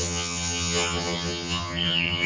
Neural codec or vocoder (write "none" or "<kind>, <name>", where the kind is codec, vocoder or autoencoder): vocoder, HiFi-GAN